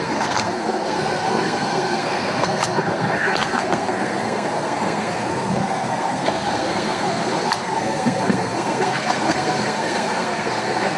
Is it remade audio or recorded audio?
remade